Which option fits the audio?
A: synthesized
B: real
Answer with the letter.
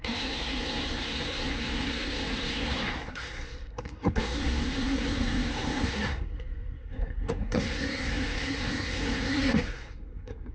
A